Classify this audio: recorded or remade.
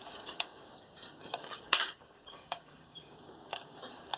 remade